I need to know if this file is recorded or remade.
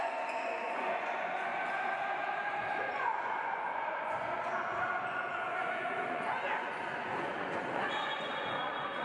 remade